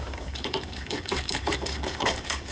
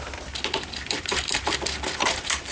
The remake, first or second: first